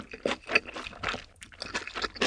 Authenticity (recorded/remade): recorded